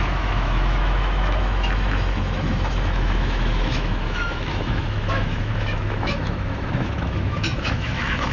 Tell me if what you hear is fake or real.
fake